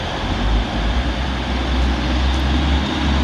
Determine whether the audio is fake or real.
real